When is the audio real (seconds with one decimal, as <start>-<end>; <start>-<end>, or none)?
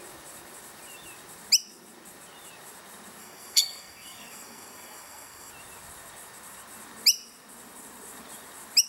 0.0-3.2; 5.5-8.9